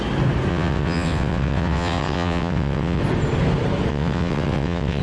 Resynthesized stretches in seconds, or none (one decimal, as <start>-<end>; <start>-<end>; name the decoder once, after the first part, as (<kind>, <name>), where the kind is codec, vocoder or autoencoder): 0.5-3.0 (vocoder, WaveNeXt); 3.9-5.0

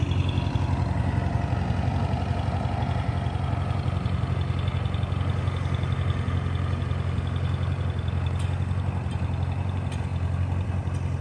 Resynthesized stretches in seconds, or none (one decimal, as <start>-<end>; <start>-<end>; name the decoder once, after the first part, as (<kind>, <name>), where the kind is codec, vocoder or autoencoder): none

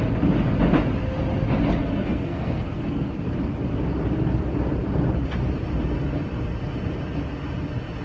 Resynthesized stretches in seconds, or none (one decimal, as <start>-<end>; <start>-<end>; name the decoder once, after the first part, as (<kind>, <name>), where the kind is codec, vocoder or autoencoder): 1.8-3.1 (codec, SNAC)

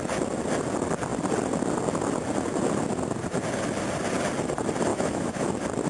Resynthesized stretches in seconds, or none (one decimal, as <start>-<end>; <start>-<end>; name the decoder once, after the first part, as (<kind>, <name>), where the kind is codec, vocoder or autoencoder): 4.9-5.5 (autoencoder, DAC-VAE)

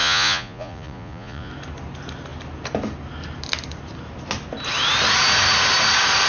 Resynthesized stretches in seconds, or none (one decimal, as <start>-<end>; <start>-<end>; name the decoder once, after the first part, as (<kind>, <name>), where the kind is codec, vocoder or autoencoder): 0.0-1.5 (vocoder, Vocos)

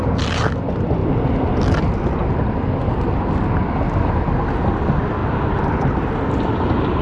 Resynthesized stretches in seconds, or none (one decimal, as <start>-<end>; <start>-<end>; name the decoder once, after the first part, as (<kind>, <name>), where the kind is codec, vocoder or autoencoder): none

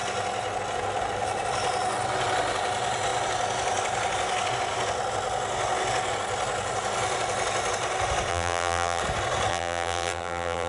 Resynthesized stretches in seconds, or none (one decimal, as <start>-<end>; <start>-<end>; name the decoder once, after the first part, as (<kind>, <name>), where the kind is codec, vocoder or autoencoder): 8.3-9.0 (vocoder, BigVGAN v2); 9.5-10.7

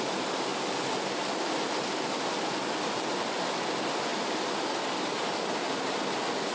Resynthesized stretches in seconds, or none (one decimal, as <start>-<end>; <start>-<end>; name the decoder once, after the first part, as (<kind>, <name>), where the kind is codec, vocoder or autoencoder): none